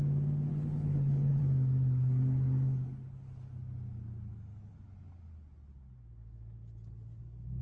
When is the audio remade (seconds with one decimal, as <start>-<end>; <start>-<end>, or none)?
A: 0.5-1.4